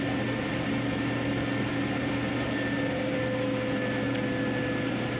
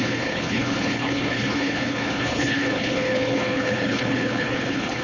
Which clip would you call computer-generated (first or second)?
second